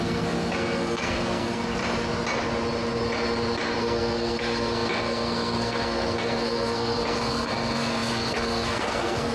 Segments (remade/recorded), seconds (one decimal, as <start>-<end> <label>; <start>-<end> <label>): 0.0-1.8 remade; 1.8-3.8 recorded; 3.8-9.3 remade

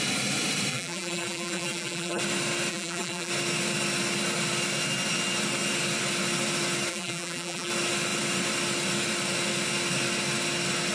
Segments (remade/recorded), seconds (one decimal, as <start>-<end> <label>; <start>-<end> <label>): 0.0-0.7 recorded; 0.7-2.2 remade; 2.2-2.7 recorded; 2.7-3.3 remade; 3.3-6.9 recorded; 6.9-7.7 remade; 7.7-10.9 recorded

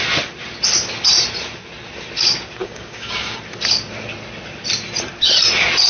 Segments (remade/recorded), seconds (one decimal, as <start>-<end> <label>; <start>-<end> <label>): 0.0-2.6 recorded; 2.6-3.4 remade; 3.4-5.9 recorded